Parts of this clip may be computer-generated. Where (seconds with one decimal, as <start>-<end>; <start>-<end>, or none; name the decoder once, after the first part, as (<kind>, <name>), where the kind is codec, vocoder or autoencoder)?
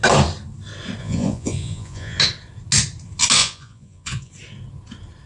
1.0-2.2 (vocoder, Vocos); 3.4-4.3